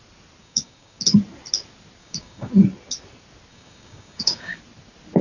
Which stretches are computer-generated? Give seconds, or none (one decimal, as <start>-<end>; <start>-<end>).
0.4-1.0; 2.0-2.5; 3.5-4.6